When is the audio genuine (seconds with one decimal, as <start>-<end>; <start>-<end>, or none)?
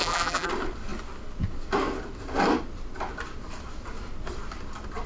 0.5-5.1